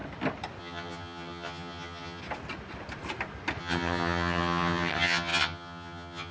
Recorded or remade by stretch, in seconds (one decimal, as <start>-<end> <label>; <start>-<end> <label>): 0.0-0.6 recorded; 0.6-2.2 remade; 2.2-3.6 recorded; 3.6-6.3 remade